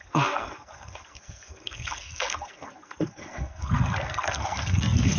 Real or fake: fake